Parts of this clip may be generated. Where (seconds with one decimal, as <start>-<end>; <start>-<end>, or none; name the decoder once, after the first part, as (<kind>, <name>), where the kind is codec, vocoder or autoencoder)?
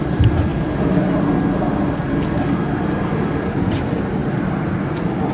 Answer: 0.0-0.5 (vocoder, BigVGAN v2); 2.4-5.3